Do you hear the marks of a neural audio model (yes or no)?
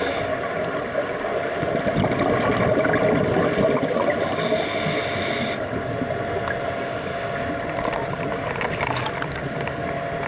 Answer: no